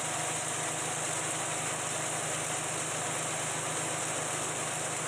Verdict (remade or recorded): recorded